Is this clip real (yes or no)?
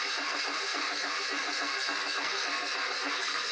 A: no